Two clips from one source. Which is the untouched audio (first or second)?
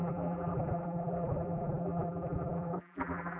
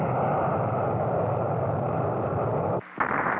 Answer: second